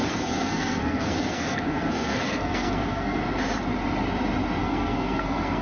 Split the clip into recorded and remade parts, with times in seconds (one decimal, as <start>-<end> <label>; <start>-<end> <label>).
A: 0.0-3.2 remade; 3.2-4.6 recorded; 4.6-5.6 remade